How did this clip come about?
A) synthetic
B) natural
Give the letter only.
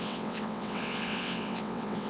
A